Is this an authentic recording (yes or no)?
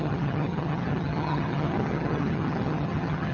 no